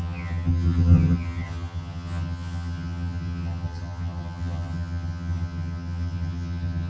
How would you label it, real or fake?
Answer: fake